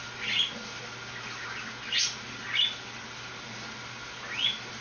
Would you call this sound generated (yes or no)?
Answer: no